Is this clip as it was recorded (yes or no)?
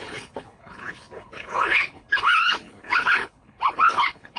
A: no